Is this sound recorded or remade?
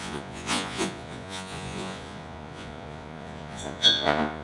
remade